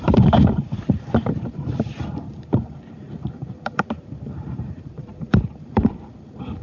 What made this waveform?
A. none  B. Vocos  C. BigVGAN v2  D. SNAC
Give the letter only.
C